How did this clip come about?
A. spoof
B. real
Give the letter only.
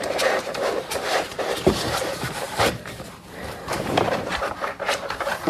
A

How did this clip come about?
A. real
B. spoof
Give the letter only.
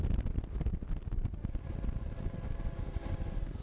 A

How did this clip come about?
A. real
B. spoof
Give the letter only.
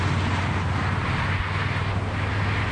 A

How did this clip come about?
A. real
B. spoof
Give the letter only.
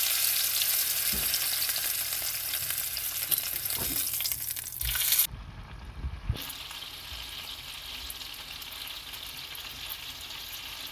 A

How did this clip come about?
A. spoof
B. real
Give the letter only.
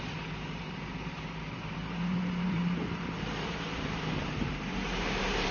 A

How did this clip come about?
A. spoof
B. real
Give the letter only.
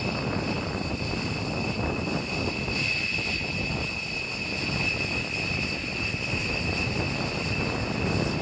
B